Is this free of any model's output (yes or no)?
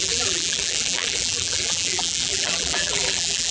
no